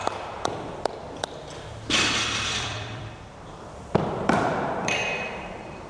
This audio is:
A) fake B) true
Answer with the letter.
A